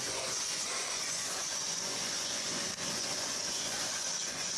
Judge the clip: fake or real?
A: fake